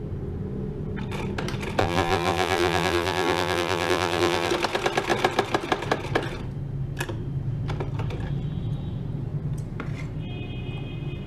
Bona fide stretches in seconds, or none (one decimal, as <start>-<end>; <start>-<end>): 0.0-1.8; 4.5-11.3